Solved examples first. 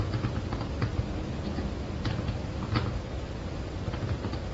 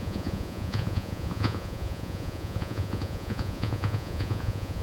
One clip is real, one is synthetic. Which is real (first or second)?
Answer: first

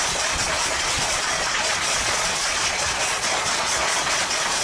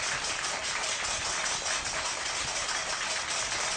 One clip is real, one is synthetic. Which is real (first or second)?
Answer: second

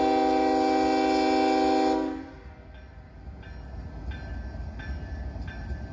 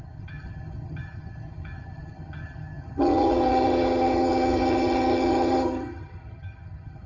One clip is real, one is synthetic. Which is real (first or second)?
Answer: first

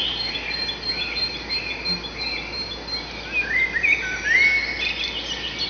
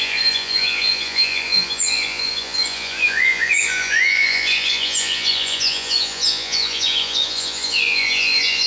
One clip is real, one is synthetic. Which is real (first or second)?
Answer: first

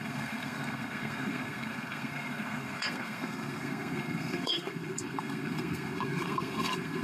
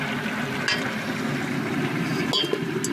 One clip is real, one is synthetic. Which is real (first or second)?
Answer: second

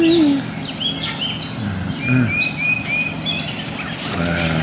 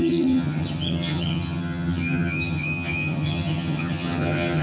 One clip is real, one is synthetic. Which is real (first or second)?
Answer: first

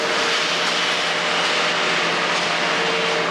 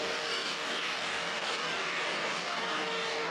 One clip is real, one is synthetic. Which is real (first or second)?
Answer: first